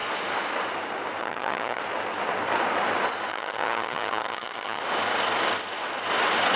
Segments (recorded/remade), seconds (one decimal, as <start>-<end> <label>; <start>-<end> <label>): 0.0-1.2 recorded; 1.2-1.8 remade; 1.8-3.3 recorded; 3.3-4.8 remade; 4.8-6.6 recorded